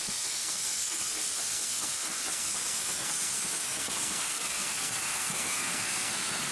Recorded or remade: remade